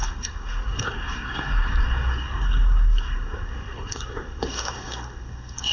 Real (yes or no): no